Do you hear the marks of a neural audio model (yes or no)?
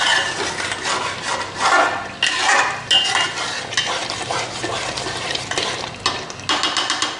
no